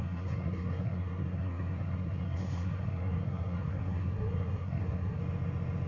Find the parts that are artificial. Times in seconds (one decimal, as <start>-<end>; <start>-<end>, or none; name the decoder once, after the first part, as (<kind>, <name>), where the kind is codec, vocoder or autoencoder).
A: 0.0-5.2 (codec, SNAC)